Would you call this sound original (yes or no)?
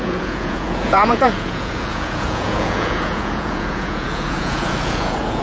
no